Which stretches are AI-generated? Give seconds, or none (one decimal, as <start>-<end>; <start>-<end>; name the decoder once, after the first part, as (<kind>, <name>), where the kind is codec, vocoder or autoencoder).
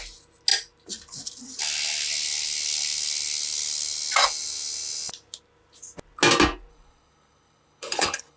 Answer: 6.7-8.4 (codec, HILCodec)